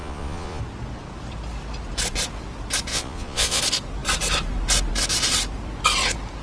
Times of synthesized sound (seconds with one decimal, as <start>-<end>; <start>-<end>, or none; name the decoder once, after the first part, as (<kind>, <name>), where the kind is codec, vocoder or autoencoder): 0.0-0.6 (vocoder, Vocos); 2.9-3.6

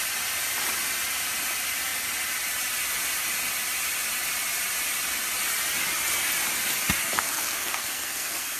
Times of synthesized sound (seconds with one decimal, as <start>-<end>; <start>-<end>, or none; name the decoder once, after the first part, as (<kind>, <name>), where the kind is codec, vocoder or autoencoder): 7.0-8.6 (codec, SNAC)

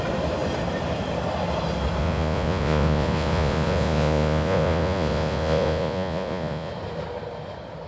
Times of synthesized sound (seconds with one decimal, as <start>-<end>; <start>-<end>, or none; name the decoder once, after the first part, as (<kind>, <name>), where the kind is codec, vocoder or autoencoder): 2.0-6.7 (vocoder, Vocos)

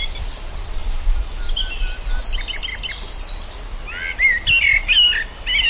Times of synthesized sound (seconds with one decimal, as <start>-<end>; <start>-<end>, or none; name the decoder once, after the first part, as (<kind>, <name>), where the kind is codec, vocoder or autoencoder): none

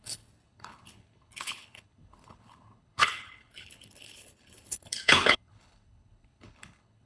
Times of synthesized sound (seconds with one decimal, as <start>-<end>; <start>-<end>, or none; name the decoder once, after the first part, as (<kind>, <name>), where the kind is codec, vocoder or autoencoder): 0.0-7.1 (codec, HILCodec)

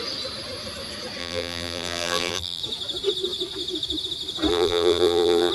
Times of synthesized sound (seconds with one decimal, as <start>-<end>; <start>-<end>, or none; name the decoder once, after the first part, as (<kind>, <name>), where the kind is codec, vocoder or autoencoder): 1.2-2.6 (vocoder, BigVGAN v2); 4.5-5.5